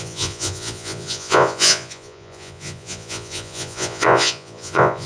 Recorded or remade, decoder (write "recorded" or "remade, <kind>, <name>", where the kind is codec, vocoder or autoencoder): remade, vocoder, Vocos